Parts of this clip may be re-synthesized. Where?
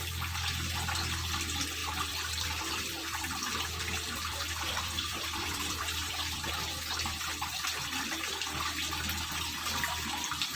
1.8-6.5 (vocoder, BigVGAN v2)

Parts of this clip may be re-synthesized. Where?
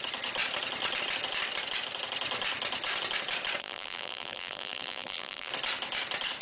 3.6-5.5 (vocoder, BigVGAN v2)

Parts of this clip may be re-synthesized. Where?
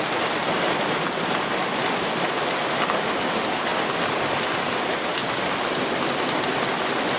none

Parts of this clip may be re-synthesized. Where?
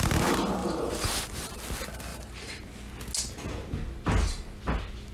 0.6-1.6 (vocoder, BigVGAN v2); 2.1-2.6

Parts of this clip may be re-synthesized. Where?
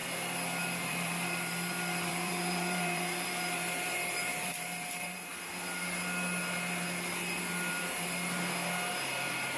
0.6-5.3 (vocoder, BigVGAN v2); 8.9-9.6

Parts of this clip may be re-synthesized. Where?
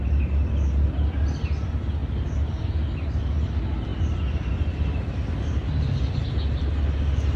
none